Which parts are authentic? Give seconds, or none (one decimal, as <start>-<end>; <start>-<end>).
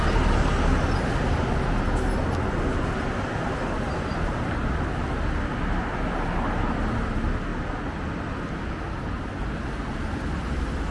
0.0-10.9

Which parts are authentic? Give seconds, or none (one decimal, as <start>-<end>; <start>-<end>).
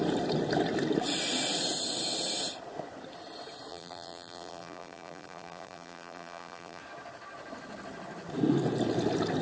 0.0-3.7; 6.8-9.4